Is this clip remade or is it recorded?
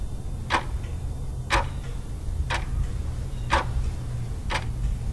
recorded